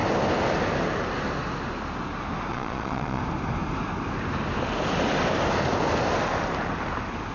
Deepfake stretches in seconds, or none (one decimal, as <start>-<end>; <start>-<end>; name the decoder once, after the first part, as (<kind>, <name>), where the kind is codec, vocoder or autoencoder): 2.5-3.2 (vocoder, Vocos)